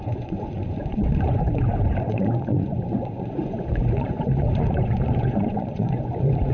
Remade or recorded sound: remade